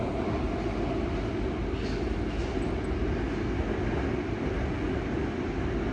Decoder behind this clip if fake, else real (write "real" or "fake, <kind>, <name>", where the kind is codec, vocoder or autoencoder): real